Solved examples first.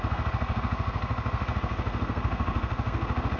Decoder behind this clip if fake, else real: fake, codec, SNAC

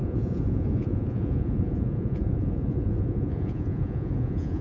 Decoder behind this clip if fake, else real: fake, vocoder, Vocos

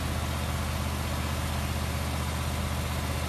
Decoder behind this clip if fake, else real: real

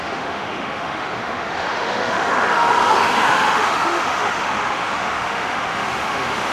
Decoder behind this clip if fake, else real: fake, autoencoder, DAC-VAE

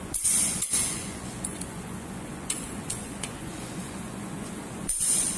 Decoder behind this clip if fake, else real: fake, vocoder, Vocos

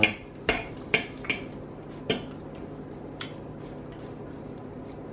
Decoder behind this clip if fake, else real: real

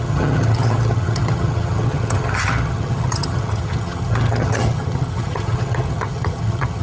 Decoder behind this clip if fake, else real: fake, vocoder, HiFi-GAN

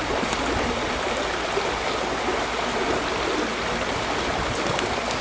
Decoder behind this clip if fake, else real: real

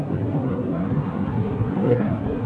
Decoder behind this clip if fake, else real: fake, codec, SNAC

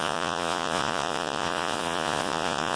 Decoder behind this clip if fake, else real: fake, vocoder, Vocos